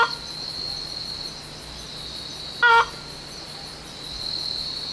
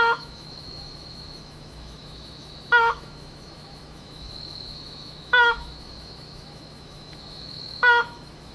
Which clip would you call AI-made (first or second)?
second